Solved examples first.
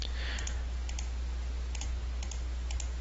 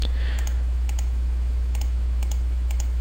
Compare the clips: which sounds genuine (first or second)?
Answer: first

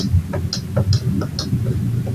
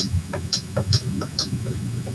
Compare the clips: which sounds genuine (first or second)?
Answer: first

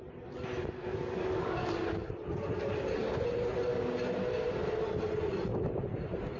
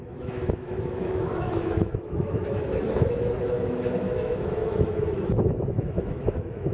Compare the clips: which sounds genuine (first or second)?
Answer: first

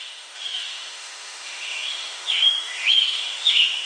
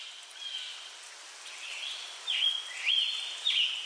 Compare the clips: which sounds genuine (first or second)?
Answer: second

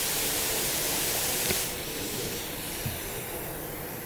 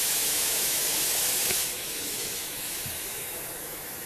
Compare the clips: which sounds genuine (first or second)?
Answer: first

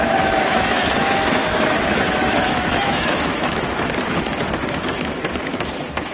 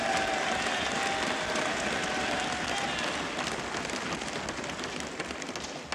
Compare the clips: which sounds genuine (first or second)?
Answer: second